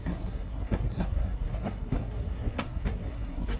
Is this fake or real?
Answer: fake